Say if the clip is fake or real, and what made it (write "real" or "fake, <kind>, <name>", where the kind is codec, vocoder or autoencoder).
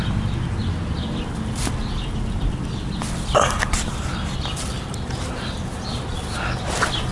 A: real